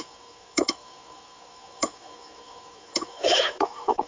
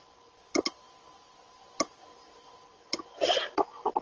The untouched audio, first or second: second